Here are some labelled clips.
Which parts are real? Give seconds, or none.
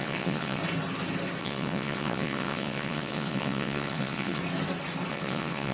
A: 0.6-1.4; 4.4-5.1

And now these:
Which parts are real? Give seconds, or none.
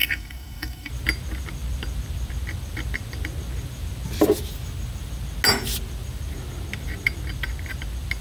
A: 0.9-8.2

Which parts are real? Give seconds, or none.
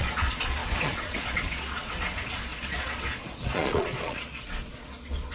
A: none